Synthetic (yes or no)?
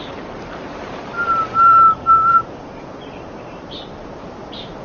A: yes